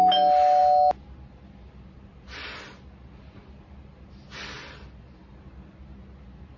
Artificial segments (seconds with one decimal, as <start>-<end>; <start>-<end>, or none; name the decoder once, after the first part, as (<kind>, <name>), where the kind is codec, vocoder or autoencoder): none